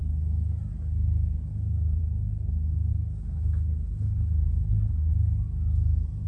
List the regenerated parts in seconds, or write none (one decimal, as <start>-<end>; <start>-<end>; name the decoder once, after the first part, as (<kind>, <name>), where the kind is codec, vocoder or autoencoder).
2.9-5.1 (codec, HILCodec)